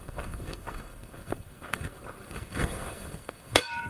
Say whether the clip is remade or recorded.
remade